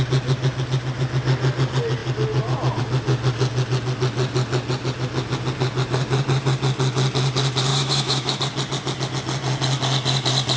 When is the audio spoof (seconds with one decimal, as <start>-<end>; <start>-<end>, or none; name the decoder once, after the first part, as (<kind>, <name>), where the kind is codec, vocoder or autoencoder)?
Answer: 7.7-8.4 (autoencoder, DAC-VAE)